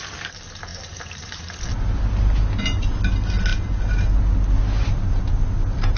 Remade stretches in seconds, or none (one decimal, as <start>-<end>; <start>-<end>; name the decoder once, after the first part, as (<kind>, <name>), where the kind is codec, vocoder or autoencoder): 0.7-1.4 (vocoder, BigVGAN v2)

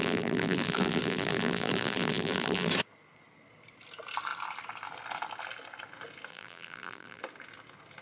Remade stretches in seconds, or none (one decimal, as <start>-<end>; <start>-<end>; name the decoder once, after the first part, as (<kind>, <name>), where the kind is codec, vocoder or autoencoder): 0.0-2.7 (vocoder, BigVGAN v2); 6.3-7.2